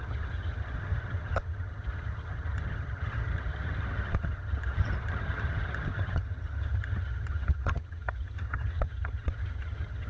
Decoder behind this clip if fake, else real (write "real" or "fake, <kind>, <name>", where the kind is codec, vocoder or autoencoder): fake, vocoder, HiFi-GAN